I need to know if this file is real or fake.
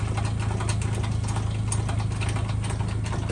real